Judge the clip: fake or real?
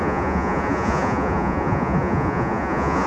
fake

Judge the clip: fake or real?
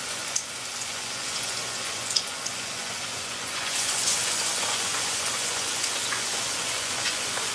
fake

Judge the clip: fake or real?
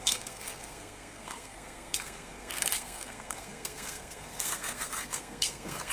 fake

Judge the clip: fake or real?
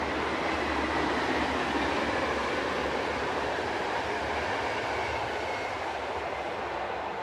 real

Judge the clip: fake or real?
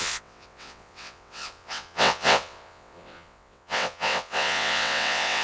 fake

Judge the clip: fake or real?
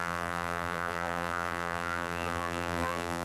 fake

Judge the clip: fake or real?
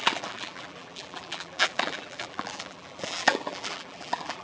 fake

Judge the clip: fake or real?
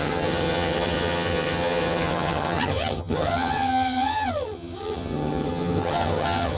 fake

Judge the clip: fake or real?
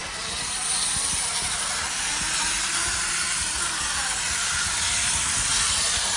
real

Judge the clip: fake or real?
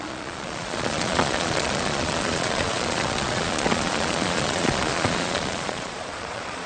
fake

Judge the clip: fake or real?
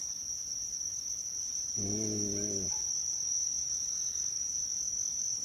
fake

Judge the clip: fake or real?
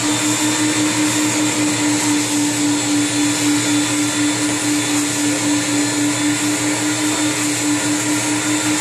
real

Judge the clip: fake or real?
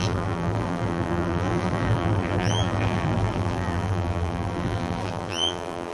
fake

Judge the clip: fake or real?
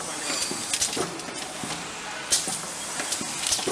real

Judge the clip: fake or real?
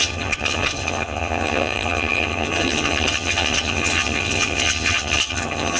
fake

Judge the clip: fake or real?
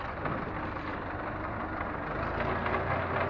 fake